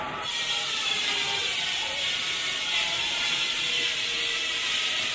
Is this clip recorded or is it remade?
remade